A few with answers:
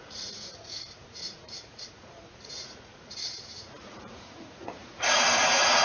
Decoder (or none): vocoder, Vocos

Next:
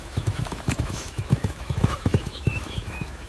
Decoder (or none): autoencoder, DAC-VAE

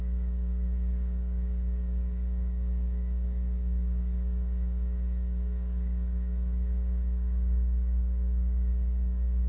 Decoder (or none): codec, DAC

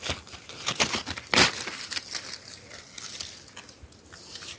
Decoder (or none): none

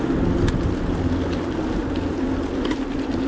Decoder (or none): none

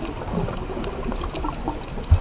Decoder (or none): none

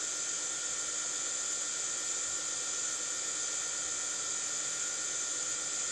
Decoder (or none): none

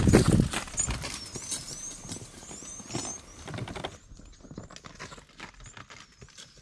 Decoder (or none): none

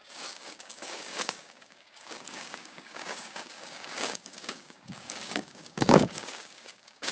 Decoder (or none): codec, DAC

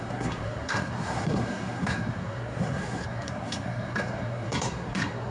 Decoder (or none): codec, SNAC